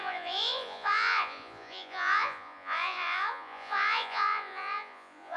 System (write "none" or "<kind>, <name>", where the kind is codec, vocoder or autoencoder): vocoder, Vocos